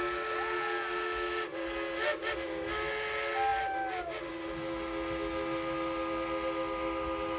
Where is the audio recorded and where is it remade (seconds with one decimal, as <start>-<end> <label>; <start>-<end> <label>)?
0.0-7.4 recorded